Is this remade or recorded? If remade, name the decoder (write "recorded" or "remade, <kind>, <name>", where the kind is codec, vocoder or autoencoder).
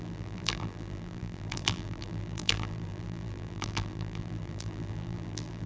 remade, vocoder, BigVGAN v2